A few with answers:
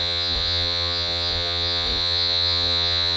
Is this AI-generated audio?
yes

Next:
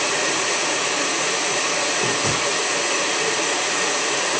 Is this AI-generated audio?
yes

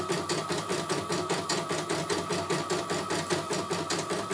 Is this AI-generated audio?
no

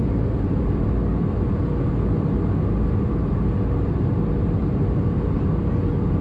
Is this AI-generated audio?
no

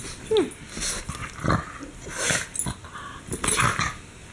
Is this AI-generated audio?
no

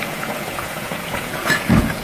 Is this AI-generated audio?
yes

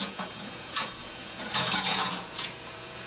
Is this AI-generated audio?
yes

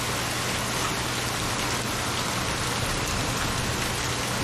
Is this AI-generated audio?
no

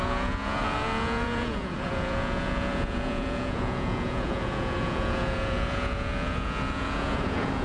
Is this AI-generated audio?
yes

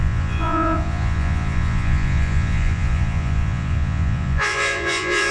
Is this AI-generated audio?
yes